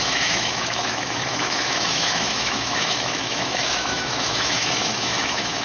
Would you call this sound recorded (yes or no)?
no